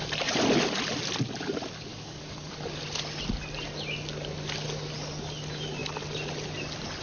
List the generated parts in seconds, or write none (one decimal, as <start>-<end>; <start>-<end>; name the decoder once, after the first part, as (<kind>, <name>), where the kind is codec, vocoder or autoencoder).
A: 1.9-2.5 (codec, DAC)